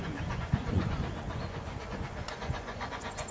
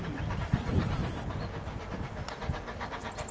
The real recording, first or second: second